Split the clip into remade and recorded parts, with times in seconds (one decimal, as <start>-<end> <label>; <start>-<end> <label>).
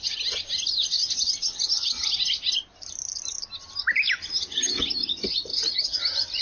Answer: 0.0-6.4 recorded